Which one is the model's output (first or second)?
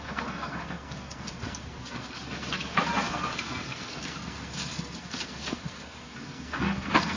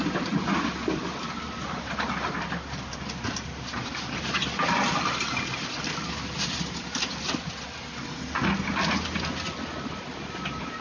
first